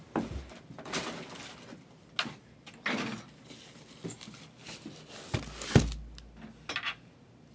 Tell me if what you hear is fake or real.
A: real